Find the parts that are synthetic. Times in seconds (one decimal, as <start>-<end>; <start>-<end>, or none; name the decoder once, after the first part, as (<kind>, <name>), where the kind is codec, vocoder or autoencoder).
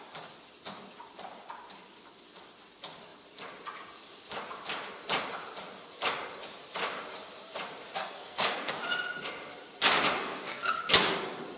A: 8.0-8.7 (codec, SNAC); 10.2-10.8